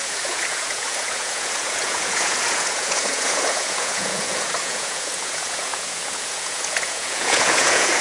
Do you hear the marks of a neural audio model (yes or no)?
yes